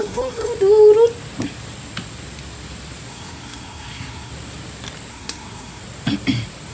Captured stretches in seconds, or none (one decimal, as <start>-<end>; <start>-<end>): 0.5-3.1; 4.3-5.1; 5.8-6.7